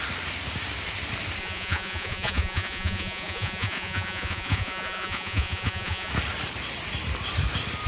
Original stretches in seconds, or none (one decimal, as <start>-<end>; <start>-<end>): 0.0-1.4; 6.1-7.9